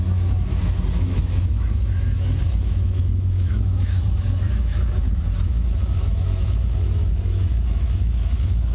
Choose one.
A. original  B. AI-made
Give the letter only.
B